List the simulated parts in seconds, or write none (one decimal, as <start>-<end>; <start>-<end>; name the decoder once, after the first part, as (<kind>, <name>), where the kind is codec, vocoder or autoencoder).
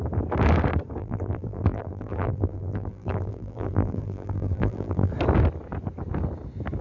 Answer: 1.0-5.1 (vocoder, BigVGAN v2)